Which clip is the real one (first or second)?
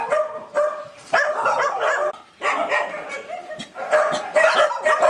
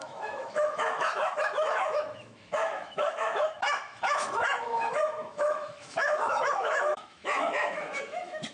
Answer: first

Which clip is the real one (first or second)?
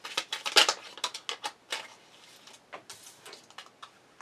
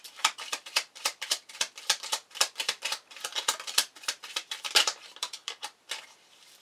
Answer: first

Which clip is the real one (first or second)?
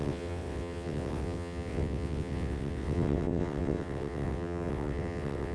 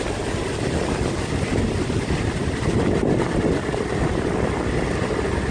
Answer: second